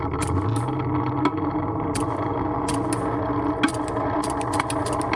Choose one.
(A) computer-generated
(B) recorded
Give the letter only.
B